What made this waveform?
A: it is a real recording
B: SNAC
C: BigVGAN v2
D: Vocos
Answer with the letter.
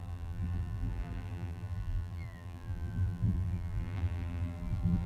C